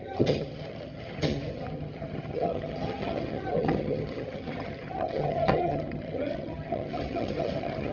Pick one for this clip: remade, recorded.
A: remade